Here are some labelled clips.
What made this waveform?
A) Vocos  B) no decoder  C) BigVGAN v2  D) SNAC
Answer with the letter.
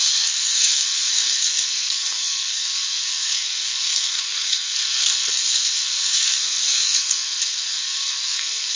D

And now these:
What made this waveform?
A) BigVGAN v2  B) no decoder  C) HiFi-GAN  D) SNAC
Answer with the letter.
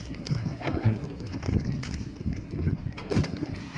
D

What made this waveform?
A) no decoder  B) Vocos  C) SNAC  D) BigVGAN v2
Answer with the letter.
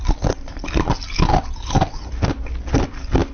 A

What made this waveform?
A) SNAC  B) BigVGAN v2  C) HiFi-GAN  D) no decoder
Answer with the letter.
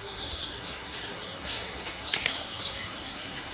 A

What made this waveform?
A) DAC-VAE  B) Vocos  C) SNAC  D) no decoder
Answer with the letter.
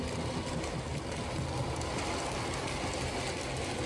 D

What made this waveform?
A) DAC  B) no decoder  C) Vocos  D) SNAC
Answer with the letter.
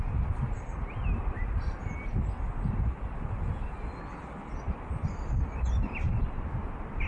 B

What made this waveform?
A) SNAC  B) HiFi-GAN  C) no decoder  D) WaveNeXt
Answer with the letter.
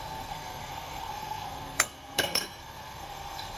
A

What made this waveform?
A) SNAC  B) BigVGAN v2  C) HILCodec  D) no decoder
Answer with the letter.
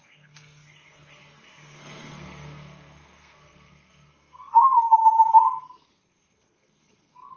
A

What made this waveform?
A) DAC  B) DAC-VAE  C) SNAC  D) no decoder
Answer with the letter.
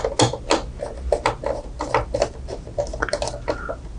D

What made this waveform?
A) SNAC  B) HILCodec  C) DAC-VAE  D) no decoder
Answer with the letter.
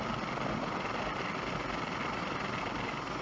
D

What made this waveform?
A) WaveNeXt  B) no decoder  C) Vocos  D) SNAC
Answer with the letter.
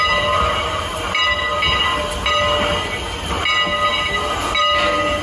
B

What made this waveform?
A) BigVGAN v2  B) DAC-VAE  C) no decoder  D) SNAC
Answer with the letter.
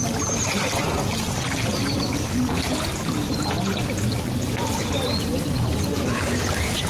C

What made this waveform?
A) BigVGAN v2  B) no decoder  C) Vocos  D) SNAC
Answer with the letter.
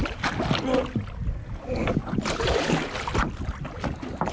B